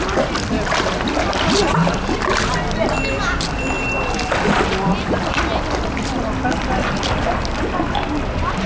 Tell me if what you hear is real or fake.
real